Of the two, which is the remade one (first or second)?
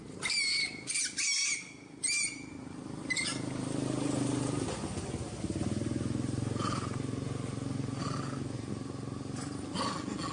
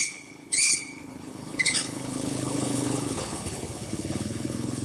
second